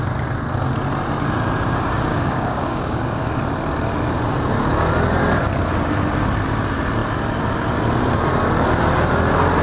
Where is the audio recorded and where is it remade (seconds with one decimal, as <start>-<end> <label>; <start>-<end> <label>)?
0.0-2.1 recorded; 2.1-3.4 remade; 3.4-9.6 recorded